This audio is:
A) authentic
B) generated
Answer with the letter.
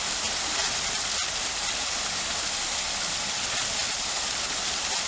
A